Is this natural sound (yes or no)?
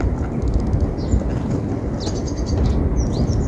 yes